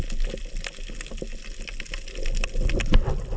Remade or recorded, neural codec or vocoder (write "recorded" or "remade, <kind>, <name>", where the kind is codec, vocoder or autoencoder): recorded